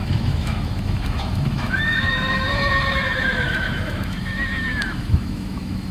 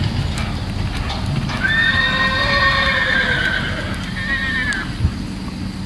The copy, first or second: first